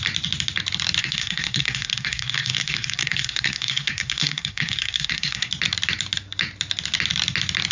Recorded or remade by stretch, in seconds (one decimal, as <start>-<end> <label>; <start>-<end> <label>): 0.0-1.0 recorded; 1.0-5.5 remade; 5.5-7.7 recorded